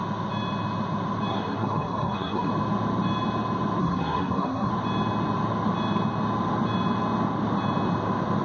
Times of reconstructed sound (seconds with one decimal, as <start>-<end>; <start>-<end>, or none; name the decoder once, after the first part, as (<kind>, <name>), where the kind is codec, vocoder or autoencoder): 1.3-2.5 (codec, SNAC); 3.8-4.7